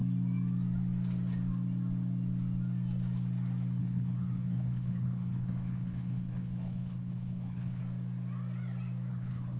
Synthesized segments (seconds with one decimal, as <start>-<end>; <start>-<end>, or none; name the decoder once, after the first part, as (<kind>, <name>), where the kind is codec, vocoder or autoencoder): 3.8-7.8 (codec, HILCodec); 9.1-9.6

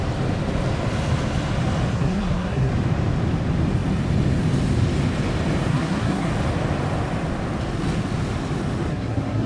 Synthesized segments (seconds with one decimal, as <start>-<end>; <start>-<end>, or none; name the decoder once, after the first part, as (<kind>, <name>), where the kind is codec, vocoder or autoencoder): 1.9-2.7 (codec, SNAC); 5.7-6.3; 8.9-9.5

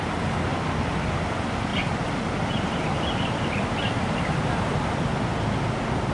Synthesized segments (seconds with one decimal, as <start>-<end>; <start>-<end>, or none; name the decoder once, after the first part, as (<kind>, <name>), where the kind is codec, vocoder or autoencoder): 0.5-1.1 (vocoder, BigVGAN v2); 1.7-5.4

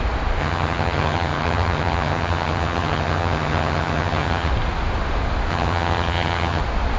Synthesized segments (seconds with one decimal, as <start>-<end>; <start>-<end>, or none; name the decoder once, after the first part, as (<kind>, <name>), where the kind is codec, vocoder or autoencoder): 0.4-4.5 (vocoder, HiFi-GAN); 5.5-6.6

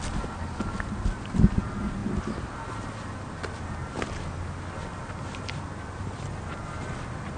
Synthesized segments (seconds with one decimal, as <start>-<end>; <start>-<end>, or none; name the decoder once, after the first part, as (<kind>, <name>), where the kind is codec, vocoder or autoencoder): none